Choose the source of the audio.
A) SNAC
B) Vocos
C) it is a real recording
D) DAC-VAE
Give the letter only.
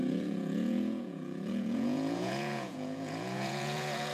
B